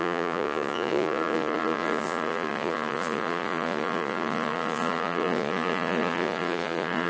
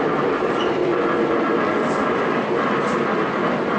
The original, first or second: second